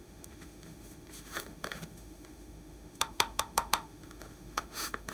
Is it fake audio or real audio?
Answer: fake